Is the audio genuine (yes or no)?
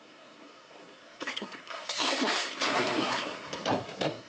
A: no